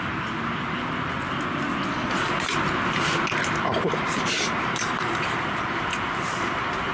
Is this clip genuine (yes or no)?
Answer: yes